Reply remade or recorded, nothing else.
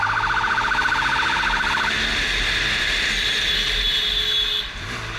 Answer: recorded